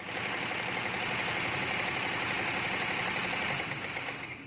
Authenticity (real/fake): real